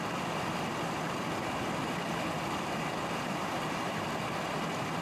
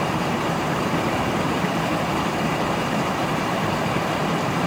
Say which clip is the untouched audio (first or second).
first